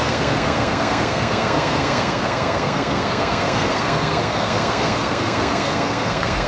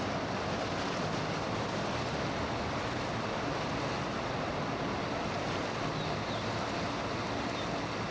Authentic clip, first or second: second